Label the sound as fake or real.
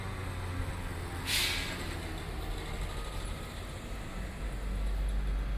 real